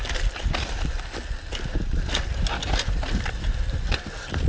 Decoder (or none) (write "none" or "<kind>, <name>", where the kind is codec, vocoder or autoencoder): none